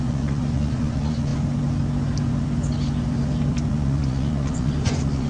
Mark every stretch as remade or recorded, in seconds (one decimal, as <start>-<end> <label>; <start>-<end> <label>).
0.0-1.3 remade; 1.3-3.7 recorded; 3.7-5.3 remade